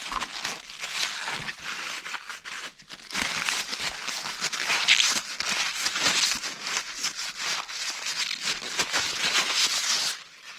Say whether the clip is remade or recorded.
recorded